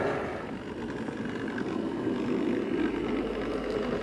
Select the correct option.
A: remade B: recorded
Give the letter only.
B